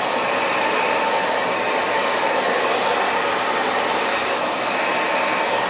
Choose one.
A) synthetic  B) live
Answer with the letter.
B